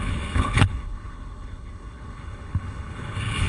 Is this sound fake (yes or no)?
yes